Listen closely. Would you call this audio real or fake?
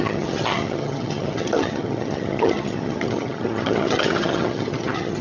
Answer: fake